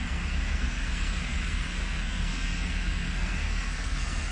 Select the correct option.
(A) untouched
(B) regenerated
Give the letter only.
B